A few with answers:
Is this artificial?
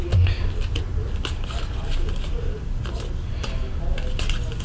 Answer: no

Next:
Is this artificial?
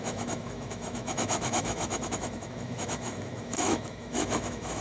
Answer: yes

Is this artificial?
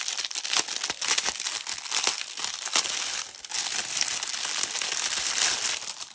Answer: no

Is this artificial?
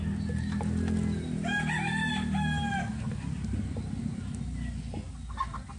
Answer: no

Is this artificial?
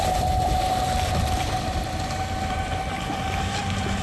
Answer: yes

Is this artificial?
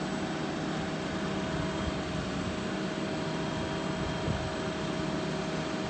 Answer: no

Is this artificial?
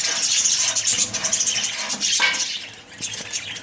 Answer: no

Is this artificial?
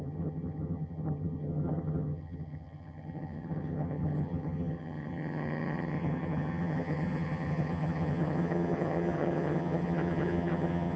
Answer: yes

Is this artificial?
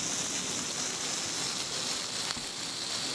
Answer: no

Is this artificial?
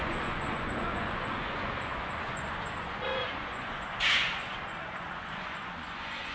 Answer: yes